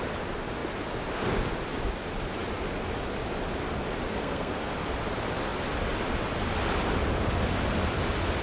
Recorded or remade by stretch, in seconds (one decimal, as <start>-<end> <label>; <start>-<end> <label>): 0.0-4.1 recorded; 4.1-4.6 remade; 4.6-8.4 recorded